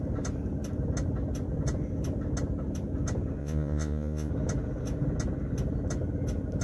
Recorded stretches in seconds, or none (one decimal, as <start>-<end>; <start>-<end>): 0.0-3.4; 4.3-6.6

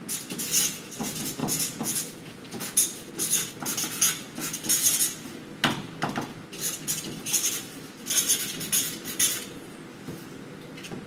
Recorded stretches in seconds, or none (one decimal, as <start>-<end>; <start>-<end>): 0.0-1.4; 3.1-11.1